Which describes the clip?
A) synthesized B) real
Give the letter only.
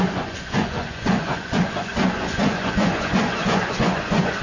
A